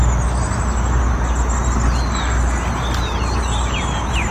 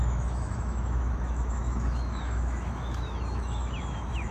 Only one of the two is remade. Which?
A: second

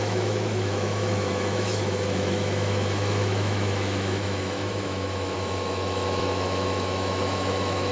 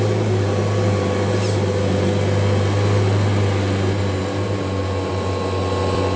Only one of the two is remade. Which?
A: first